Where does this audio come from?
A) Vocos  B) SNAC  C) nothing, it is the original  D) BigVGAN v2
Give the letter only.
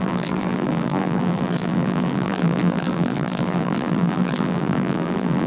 D